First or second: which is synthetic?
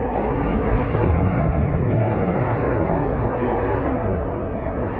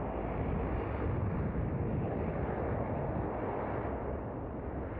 first